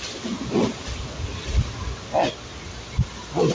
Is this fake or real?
real